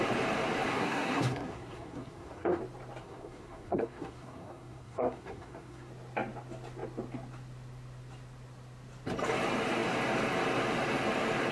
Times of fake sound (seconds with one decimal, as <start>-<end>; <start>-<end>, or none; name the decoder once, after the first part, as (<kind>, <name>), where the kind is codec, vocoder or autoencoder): 0.7-2.6 (codec, SNAC); 3.0-5.9